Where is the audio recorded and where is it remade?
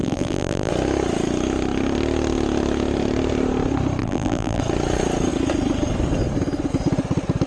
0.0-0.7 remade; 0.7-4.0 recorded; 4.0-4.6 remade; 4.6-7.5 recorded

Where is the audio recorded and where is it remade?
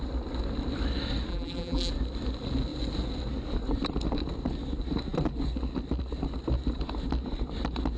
0.0-1.3 recorded; 1.3-1.9 remade; 1.9-8.0 recorded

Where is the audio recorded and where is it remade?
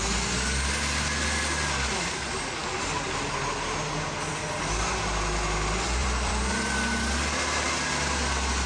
0.0-6.0 recorded; 6.0-6.5 remade; 6.5-8.7 recorded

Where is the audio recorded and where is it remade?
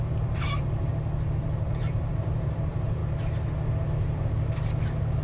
0.0-0.9 remade; 0.9-1.4 recorded; 1.4-3.0 remade; 3.0-5.2 recorded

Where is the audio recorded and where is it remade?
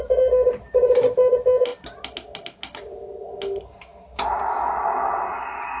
0.0-3.9 recorded; 3.9-5.0 remade; 5.0-5.8 recorded